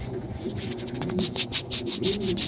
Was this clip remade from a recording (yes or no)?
yes